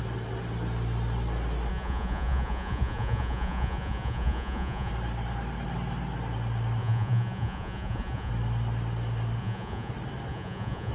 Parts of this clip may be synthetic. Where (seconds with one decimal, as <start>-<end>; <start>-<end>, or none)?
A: 1.7-4.9; 6.8-8.3; 9.4-9.9; 10.3-10.9